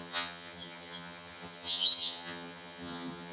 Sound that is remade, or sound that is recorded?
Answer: remade